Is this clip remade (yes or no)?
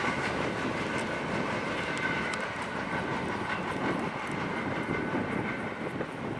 no